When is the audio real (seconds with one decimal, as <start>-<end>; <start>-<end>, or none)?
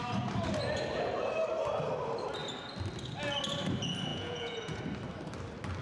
0.0-4.1; 4.8-5.8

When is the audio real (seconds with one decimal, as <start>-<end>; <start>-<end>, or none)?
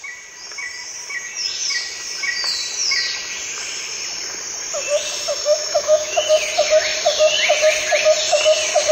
0.0-5.4; 6.2-8.9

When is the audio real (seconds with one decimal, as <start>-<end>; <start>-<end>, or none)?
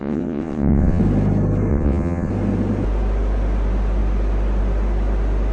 1.0-1.7; 2.3-5.5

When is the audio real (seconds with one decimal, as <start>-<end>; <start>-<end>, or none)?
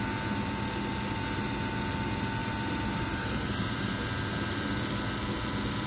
0.0-2.4; 3.9-5.9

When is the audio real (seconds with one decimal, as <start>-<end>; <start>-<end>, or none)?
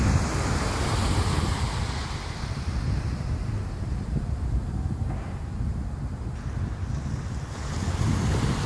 0.0-8.7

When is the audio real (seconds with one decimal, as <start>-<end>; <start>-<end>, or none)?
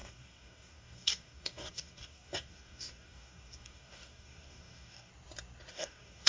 5.1-5.7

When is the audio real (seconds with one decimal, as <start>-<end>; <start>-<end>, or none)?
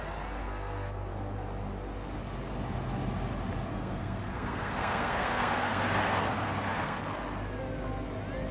0.0-0.4; 1.1-3.7; 7.0-8.5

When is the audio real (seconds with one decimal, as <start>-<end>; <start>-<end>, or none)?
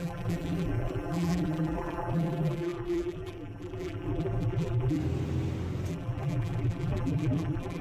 5.0-5.9